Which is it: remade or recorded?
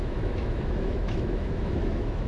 remade